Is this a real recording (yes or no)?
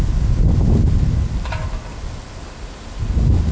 yes